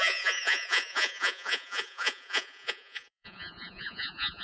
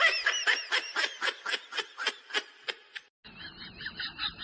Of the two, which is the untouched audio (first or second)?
second